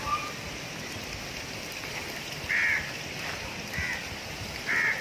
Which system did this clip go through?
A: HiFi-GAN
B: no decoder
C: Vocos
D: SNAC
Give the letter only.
B